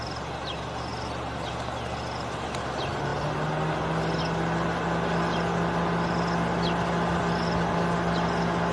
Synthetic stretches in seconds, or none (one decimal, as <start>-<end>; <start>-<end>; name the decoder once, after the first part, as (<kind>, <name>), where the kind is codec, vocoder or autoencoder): none

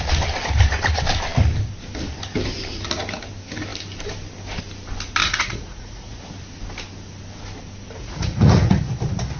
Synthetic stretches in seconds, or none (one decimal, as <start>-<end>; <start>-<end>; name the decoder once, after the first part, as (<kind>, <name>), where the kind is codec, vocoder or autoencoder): 5.2-6.2 (vocoder, Vocos); 8.0-8.9

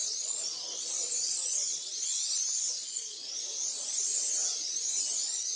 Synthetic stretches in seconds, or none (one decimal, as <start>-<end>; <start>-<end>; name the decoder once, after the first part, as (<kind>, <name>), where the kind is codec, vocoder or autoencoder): 0.0-4.1 (vocoder, Vocos); 4.6-5.6